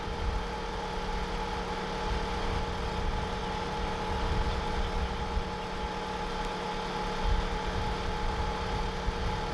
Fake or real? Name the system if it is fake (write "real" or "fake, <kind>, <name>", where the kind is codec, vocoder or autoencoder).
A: real